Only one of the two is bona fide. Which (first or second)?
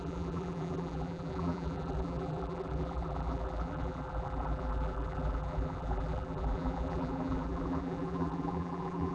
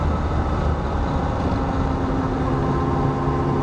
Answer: second